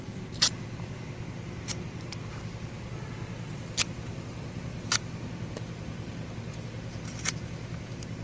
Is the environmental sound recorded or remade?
recorded